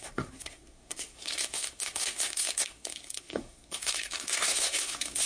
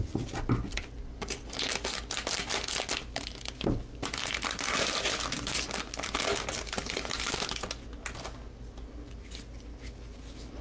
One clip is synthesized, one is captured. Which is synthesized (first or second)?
first